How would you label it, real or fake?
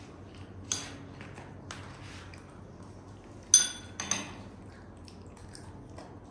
real